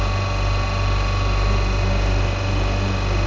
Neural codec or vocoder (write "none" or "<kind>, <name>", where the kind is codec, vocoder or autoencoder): none